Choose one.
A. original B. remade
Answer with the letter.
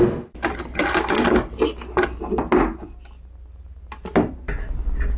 A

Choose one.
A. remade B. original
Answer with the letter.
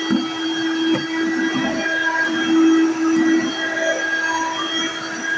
B